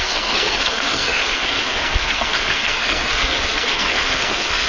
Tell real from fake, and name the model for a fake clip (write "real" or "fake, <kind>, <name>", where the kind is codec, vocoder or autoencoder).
fake, codec, SNAC